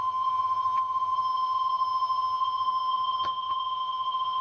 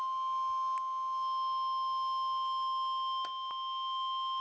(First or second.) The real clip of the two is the second